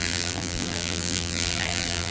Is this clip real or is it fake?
fake